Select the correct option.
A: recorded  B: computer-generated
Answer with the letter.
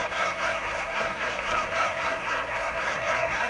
B